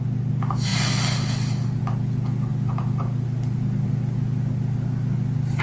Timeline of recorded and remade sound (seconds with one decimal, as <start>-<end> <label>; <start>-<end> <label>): 0.0-5.6 recorded